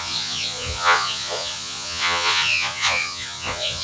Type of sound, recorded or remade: remade